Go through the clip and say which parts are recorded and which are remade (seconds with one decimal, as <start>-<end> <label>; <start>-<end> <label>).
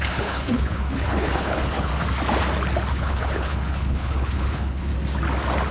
0.0-1.9 remade; 1.9-2.9 recorded; 2.9-4.9 remade; 4.9-5.7 recorded